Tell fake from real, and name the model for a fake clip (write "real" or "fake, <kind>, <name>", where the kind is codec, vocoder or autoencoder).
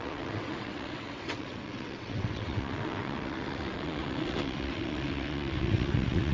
fake, vocoder, WaveNeXt